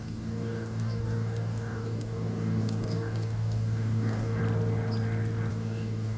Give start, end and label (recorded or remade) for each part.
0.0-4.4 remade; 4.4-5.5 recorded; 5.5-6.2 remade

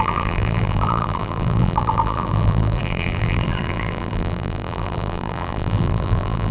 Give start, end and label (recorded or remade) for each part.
0.0-6.5 remade